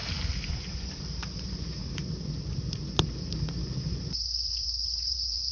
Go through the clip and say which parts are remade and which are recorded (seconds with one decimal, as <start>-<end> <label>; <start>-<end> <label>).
0.0-0.9 recorded; 0.9-1.8 remade; 1.8-3.9 recorded; 3.9-5.5 remade